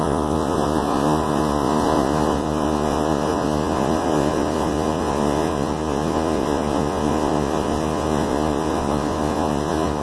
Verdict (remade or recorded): remade